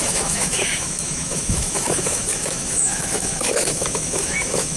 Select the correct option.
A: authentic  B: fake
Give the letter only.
B